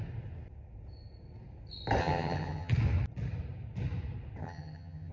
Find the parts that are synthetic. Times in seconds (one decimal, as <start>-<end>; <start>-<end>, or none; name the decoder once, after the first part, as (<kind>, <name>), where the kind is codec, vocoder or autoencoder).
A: 2.0-2.7 (vocoder, HiFi-GAN); 4.4-5.1